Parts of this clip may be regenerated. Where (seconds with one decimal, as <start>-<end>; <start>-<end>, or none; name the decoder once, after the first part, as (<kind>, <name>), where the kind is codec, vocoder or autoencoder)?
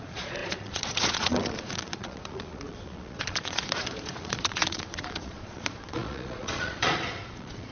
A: 0.0-7.7 (vocoder, Vocos)